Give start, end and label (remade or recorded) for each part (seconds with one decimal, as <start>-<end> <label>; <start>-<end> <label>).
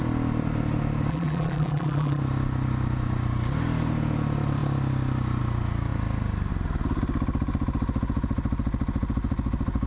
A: 0.0-1.1 recorded; 1.1-2.2 remade; 2.2-9.9 recorded